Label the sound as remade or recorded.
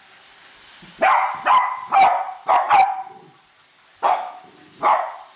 recorded